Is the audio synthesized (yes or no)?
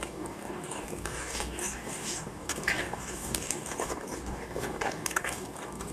yes